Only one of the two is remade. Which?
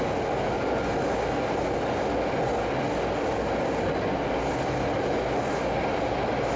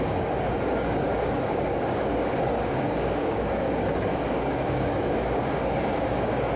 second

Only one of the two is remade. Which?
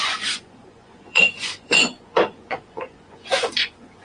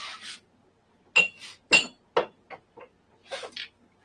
first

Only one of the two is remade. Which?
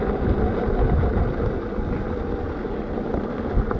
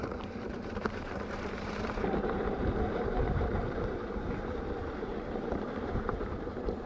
second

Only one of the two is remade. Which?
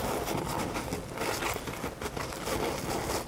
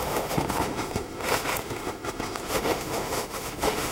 second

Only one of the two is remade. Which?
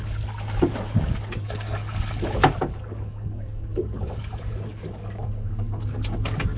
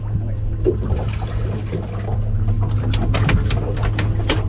first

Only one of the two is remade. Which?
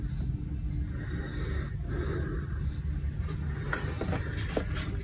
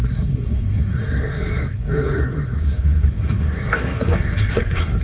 second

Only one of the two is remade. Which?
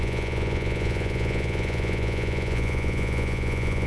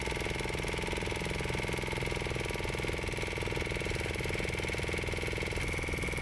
first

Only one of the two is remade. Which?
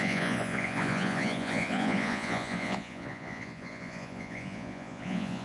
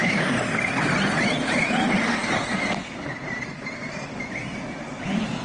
first